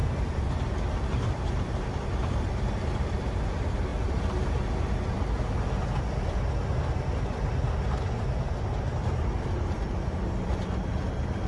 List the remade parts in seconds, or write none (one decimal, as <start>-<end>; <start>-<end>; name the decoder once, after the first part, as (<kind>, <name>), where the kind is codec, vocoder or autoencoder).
0.0-3.9 (vocoder, BigVGAN v2); 8.4-11.5